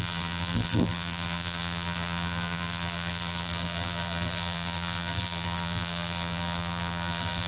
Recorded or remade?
remade